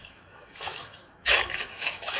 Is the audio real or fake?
fake